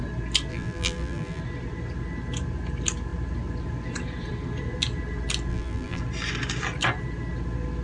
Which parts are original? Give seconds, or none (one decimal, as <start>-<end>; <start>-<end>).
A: 0.0-0.5; 1.4-5.5; 6.0-7.8